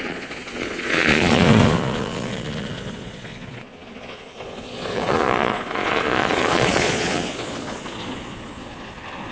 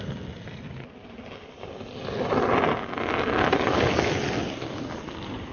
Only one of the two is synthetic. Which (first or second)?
first